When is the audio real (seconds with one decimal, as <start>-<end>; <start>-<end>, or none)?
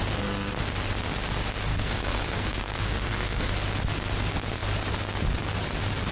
0.0-1.7; 3.5-6.1